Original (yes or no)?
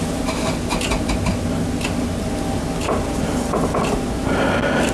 yes